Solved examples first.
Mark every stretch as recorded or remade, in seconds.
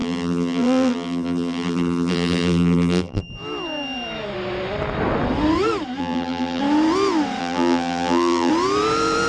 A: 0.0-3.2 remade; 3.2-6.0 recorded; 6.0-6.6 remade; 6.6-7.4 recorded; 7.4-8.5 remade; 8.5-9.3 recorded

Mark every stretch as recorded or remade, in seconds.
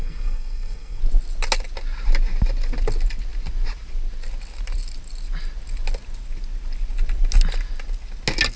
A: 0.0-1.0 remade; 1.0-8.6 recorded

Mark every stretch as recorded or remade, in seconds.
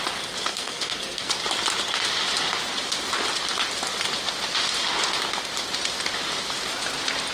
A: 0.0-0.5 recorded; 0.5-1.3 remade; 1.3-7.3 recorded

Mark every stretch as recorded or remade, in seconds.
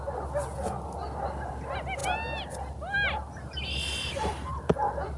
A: 0.0-5.2 recorded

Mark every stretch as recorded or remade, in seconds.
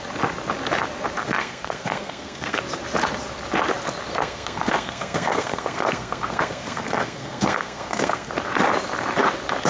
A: 0.0-1.2 recorded; 1.2-2.6 remade; 2.6-4.1 recorded; 4.1-8.3 remade; 8.3-9.7 recorded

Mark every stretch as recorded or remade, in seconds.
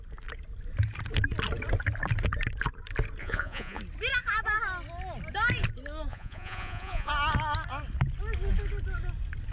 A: 0.0-3.2 recorded; 3.2-3.8 remade; 3.8-6.1 recorded; 6.1-7.1 remade; 7.1-9.5 recorded